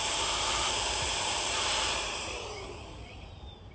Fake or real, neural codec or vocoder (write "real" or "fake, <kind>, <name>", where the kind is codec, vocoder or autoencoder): fake, vocoder, BigVGAN v2